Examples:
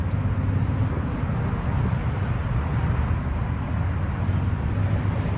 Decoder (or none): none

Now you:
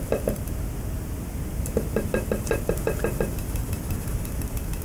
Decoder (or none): none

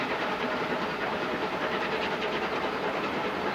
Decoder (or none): none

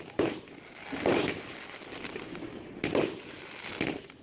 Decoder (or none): none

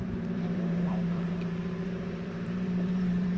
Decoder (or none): vocoder, BigVGAN v2